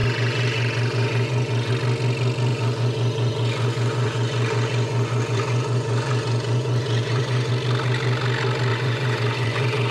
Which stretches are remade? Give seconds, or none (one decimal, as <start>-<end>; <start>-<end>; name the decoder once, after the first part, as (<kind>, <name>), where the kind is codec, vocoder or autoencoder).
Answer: 0.0-1.7 (vocoder, Vocos); 2.5-7.5; 8.7-9.9